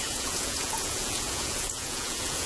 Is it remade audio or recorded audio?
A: remade